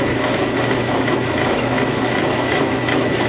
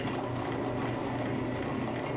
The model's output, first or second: first